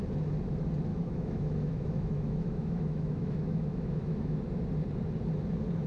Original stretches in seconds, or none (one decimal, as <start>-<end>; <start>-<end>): 0.0-0.9; 4.4-5.9